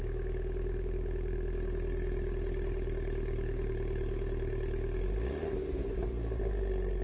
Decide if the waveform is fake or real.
real